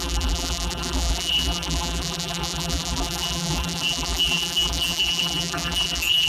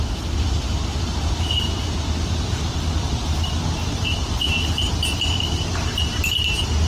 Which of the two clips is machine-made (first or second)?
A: first